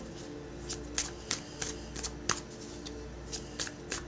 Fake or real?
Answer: real